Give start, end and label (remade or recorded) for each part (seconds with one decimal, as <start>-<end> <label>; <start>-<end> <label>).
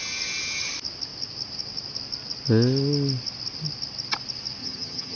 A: 0.0-4.6 recorded; 4.6-5.2 remade